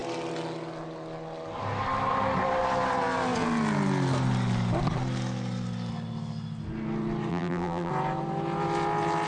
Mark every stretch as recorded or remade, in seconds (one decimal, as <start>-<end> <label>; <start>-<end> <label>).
0.0-7.3 recorded; 7.3-7.9 remade; 7.9-9.3 recorded